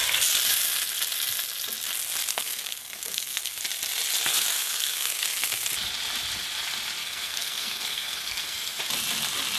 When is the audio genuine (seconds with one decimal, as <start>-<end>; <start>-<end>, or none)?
0.0-2.3; 3.6-4.3; 5.7-7.0; 8.8-9.6